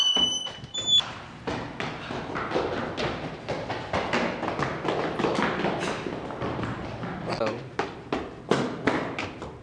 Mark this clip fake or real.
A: real